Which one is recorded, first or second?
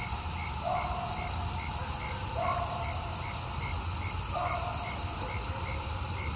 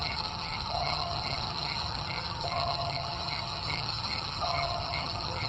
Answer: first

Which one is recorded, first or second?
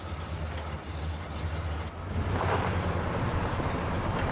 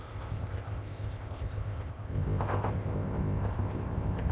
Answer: first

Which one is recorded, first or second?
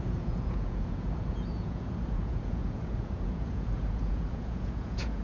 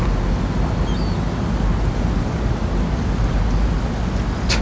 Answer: second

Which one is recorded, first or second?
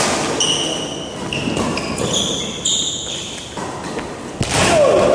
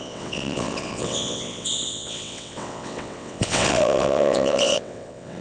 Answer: first